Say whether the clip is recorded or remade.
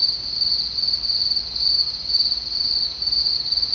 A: recorded